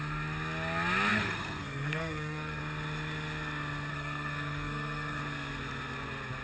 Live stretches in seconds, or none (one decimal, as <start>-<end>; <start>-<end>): 0.0-1.1; 2.6-3.9; 5.2-6.4